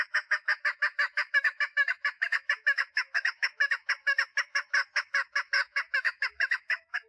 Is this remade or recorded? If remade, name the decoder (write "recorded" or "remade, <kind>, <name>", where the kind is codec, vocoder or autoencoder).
remade, autoencoder, DAC-VAE